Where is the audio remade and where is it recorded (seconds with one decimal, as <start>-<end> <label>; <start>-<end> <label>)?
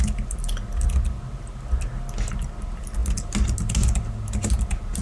0.0-5.0 recorded